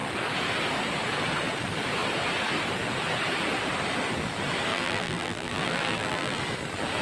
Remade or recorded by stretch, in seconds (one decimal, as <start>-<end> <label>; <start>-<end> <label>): 0.0-4.7 recorded; 4.7-6.4 remade; 6.4-7.0 recorded